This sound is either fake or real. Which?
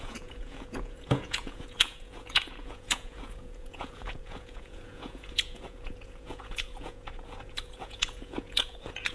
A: fake